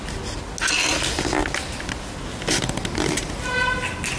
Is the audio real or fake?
real